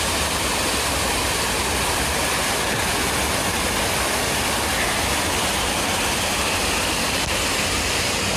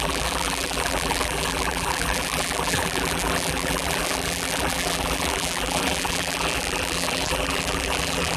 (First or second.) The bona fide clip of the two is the first